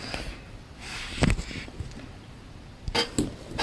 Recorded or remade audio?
recorded